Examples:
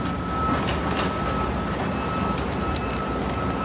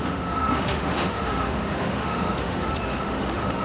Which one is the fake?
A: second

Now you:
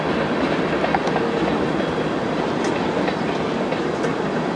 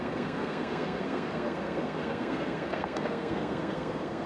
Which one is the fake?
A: second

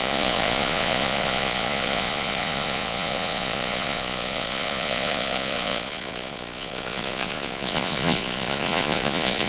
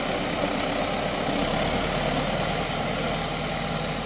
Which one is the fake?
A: first